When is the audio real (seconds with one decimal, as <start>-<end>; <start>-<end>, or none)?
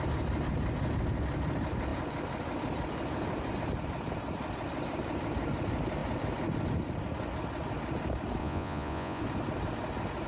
0.0-8.4; 9.2-10.3